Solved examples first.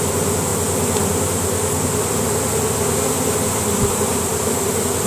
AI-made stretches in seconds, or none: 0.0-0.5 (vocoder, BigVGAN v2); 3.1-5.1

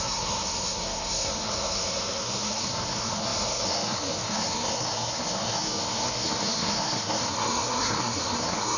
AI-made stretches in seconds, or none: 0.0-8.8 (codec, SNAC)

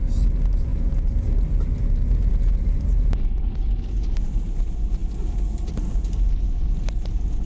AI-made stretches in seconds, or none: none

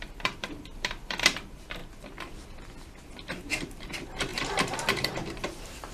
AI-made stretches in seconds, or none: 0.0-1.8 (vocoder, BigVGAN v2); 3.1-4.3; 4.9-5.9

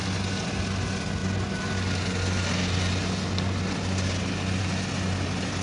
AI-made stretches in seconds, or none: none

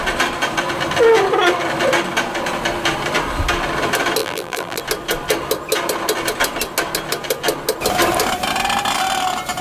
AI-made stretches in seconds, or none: 4.2-4.8 (vocoder, BigVGAN v2)